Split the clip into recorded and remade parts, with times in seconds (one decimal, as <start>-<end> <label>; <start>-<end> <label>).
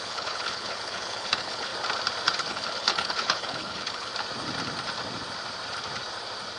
0.0-1.7 remade; 1.7-2.5 recorded; 2.5-4.1 remade; 4.1-6.6 recorded